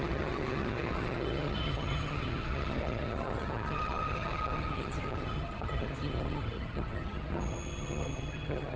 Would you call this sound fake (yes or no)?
yes